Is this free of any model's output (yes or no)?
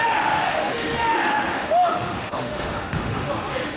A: no